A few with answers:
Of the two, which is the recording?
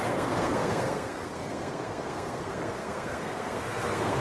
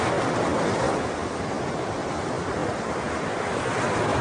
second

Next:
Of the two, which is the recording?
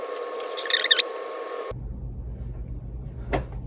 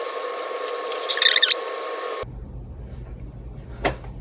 first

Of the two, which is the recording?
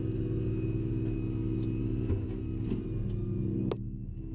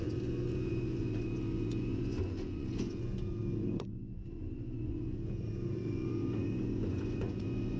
first